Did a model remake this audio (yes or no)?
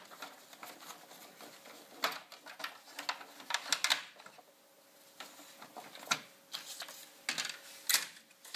no